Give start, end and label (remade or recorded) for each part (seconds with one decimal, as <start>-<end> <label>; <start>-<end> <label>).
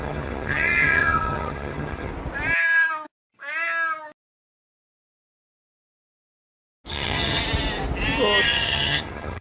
0.0-2.1 remade; 2.1-6.9 recorded; 6.9-7.4 remade; 7.4-8.4 recorded; 8.4-9.4 remade